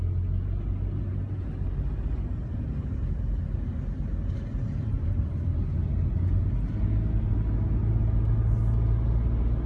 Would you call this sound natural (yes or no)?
yes